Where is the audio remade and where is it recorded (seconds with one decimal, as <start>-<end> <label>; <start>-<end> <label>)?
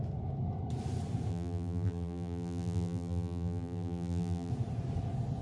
0.0-1.3 recorded; 1.3-4.5 remade; 4.5-5.4 recorded